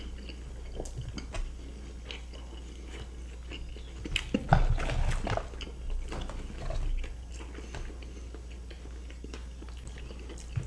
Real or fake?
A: real